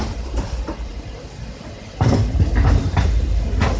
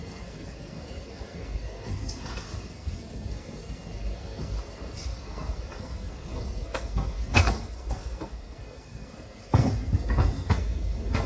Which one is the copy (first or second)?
second